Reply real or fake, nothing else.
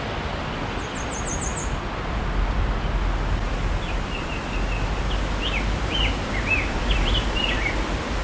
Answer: real